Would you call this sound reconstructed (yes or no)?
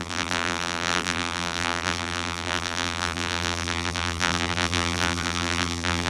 yes